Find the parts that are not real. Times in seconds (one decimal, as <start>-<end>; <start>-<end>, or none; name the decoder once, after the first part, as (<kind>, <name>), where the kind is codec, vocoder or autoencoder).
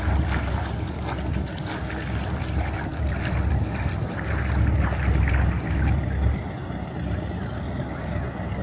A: none